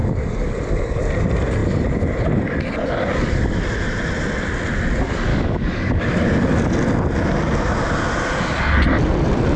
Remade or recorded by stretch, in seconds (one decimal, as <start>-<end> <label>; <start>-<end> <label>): 0.0-1.0 remade; 1.0-5.3 recorded; 5.3-6.0 remade; 6.0-9.6 recorded